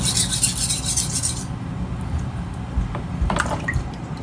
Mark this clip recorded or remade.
recorded